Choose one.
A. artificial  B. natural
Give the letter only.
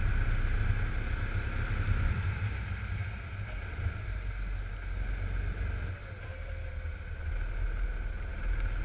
B